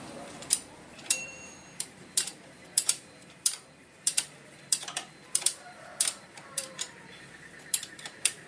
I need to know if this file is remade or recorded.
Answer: remade